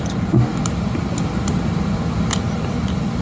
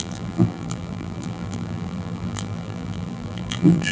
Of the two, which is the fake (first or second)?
second